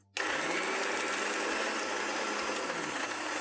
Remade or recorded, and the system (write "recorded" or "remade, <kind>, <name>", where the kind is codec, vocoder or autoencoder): recorded